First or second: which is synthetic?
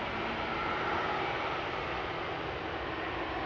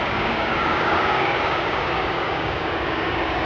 second